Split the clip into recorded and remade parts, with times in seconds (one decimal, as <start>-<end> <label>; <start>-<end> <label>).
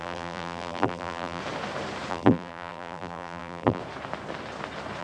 0.0-1.4 remade; 1.4-2.1 recorded; 2.1-3.8 remade; 3.8-5.0 recorded